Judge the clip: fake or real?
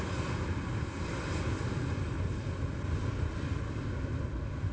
real